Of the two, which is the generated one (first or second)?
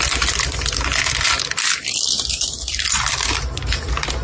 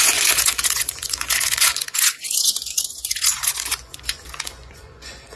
second